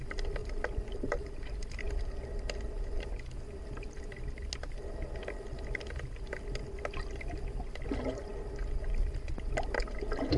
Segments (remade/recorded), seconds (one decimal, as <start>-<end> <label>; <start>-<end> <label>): 0.0-0.4 recorded; 0.4-1.8 remade; 1.8-10.4 recorded